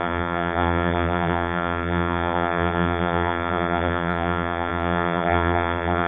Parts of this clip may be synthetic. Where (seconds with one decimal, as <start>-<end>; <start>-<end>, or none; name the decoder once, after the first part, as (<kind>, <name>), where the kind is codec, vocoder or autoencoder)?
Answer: 0.0-6.1 (vocoder, BigVGAN v2)